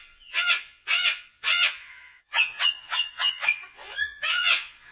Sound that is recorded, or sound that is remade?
remade